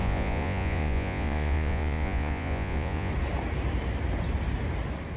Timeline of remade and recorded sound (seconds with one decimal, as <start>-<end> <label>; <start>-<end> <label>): 0.0-3.1 remade; 3.1-5.2 recorded